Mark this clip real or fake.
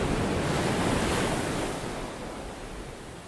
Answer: real